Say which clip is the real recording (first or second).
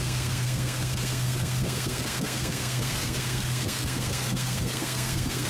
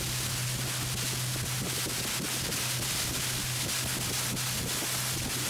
second